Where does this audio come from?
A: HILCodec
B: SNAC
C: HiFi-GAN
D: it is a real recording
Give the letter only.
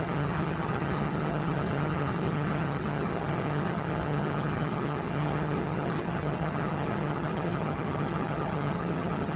C